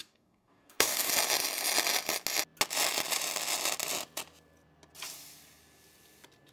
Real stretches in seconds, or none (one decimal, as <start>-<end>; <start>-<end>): 1.1-6.5